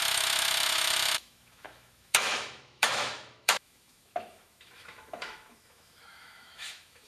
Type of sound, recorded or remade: remade